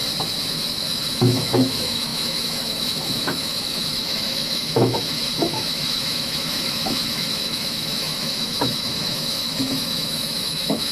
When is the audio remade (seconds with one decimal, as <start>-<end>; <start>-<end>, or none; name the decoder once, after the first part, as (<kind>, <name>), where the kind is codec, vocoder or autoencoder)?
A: 0.5-10.9 (autoencoder, DAC-VAE)